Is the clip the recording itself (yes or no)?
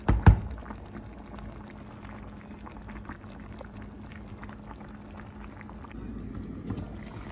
yes